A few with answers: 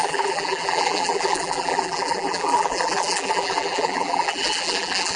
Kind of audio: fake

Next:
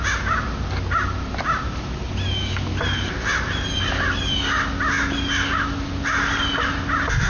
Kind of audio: real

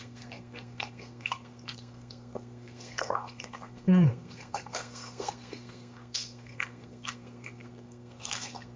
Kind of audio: fake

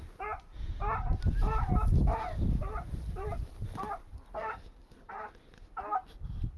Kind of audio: real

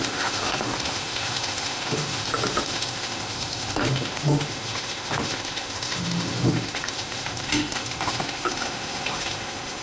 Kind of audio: fake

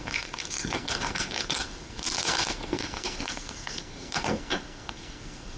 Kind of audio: fake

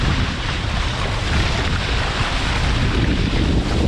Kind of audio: real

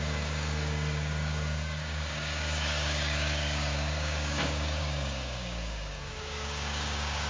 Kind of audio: fake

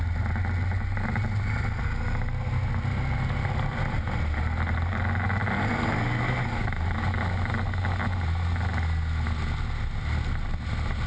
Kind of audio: real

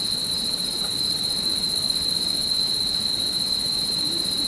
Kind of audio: fake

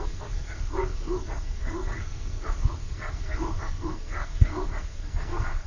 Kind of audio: fake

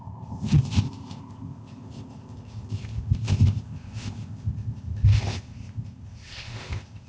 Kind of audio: fake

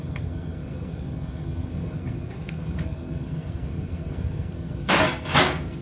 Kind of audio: fake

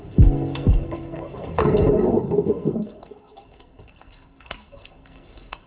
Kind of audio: fake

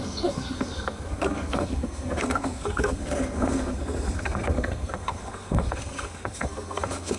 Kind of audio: fake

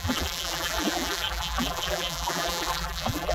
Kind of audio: fake